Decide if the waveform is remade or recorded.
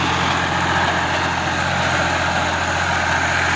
recorded